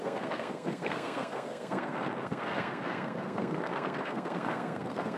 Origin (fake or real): fake